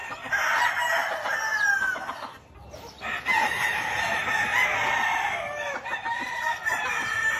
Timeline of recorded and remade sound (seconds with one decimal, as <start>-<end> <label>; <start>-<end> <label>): 0.0-3.2 recorded; 3.2-4.2 remade; 4.2-6.8 recorded; 6.8-7.4 remade